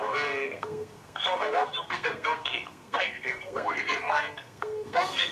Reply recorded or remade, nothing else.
remade